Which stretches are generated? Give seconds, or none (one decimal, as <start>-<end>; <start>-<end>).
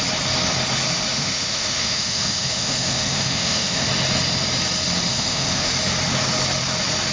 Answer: 1.1-3.9; 5.1-5.7